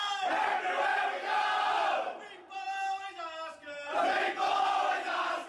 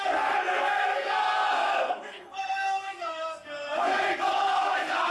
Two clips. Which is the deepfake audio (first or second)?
second